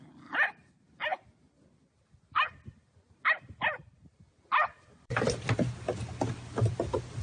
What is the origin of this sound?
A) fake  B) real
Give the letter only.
B